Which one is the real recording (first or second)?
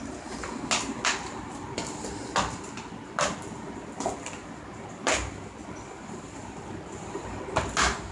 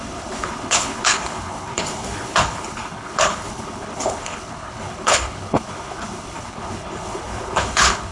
first